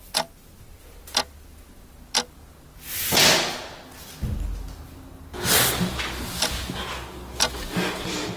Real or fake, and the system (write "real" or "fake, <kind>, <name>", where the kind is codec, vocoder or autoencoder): real